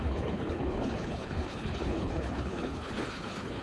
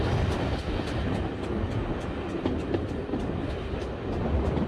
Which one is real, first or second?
second